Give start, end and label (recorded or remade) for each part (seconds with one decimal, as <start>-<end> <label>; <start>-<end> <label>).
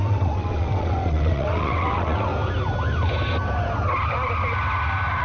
0.0-2.3 remade; 2.3-5.2 recorded